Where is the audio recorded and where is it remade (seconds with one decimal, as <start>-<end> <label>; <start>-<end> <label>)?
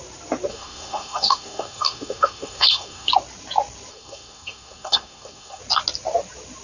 0.0-0.5 recorded; 0.5-3.1 remade; 3.1-3.9 recorded; 3.9-5.6 remade; 5.6-6.6 recorded